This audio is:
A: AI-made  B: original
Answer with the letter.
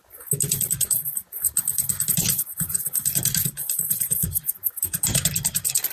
B